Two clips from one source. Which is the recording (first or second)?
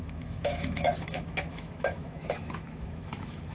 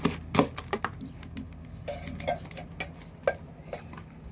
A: second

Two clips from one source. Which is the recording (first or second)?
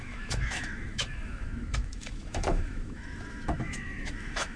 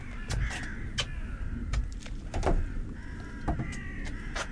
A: second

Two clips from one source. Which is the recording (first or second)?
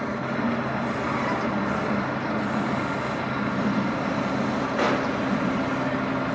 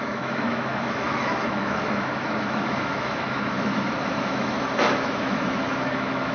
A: first